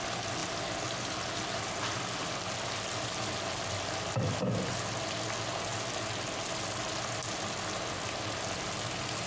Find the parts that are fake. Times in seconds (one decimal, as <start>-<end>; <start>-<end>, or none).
none